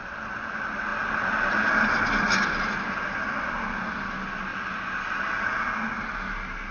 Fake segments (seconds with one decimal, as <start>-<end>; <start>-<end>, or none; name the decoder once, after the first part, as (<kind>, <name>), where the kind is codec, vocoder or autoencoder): none